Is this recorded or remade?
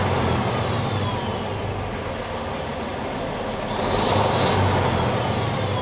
recorded